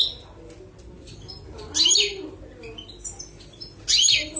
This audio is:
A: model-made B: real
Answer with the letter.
B